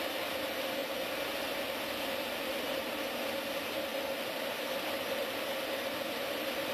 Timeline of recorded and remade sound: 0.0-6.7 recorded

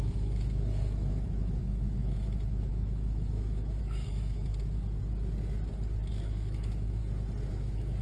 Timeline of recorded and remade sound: 0.0-4.5 remade; 4.5-6.1 recorded; 6.1-7.0 remade; 7.0-7.5 recorded; 7.5-8.0 remade

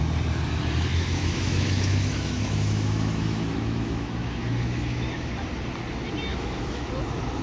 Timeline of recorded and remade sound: 0.0-0.9 recorded; 0.9-5.3 remade; 5.3-6.3 recorded; 6.3-6.9 remade; 6.9-7.4 recorded

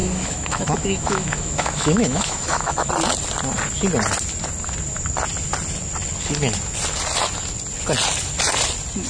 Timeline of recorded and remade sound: 0.0-2.9 remade; 2.9-9.1 recorded